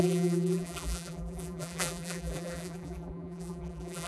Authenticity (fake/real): fake